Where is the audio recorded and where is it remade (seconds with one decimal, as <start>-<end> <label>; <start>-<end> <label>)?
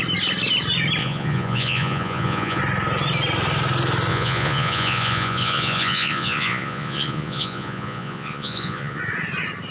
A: 0.0-1.0 recorded; 1.0-2.6 remade; 2.6-4.1 recorded; 4.1-9.0 remade; 9.0-9.7 recorded